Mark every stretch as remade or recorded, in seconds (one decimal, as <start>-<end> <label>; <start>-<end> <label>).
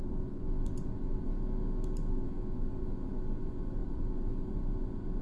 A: 0.0-1.3 remade; 1.3-2.1 recorded; 2.1-5.2 remade